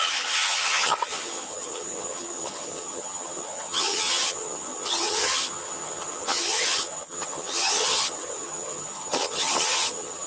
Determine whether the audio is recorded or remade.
remade